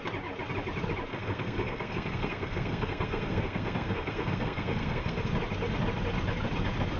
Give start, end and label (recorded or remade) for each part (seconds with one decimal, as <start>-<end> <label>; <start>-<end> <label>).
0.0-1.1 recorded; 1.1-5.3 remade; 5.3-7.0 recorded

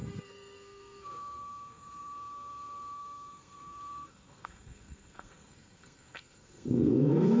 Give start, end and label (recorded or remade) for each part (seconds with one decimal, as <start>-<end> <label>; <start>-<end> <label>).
0.0-7.4 remade

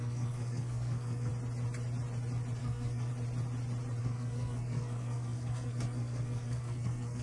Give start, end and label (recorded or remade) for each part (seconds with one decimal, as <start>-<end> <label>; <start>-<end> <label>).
0.0-1.3 remade; 1.3-2.6 recorded; 2.6-3.1 remade; 3.1-4.0 recorded; 4.0-7.2 remade